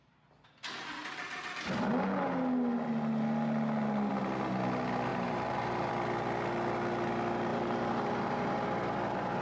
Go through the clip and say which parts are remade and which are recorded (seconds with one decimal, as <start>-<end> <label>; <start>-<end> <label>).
0.0-5.1 recorded; 5.1-5.9 remade; 5.9-7.5 recorded; 7.5-8.6 remade; 8.6-9.4 recorded